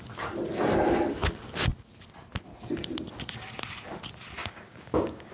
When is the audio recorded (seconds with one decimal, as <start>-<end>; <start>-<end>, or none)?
0.0-4.4